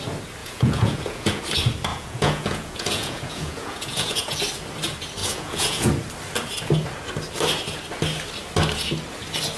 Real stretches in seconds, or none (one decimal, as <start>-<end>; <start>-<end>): 0.0-0.4; 1.4-1.9; 4.4-5.2; 5.9-9.6